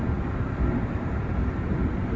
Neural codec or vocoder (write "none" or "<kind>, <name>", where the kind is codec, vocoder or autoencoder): vocoder, BigVGAN v2